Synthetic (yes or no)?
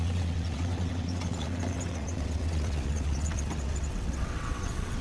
yes